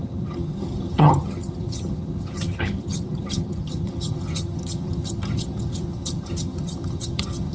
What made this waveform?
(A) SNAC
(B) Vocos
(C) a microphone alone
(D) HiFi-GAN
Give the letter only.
D